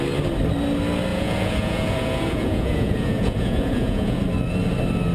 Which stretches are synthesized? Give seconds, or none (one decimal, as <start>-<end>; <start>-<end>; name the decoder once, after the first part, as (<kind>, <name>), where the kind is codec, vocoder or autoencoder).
1.1-4.2 (vocoder, Vocos)